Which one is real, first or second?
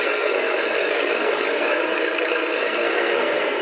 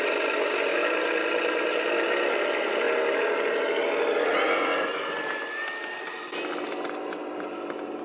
second